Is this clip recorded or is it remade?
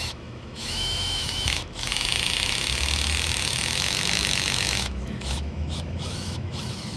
remade